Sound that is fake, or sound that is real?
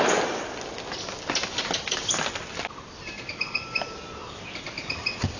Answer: real